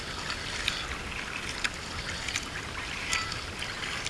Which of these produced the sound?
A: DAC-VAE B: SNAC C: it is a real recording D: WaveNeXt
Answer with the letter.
C